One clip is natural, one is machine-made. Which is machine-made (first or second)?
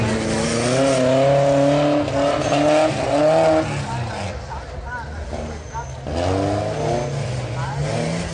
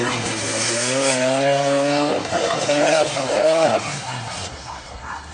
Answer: second